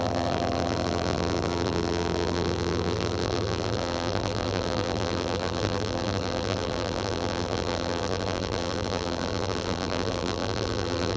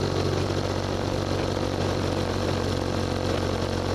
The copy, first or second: first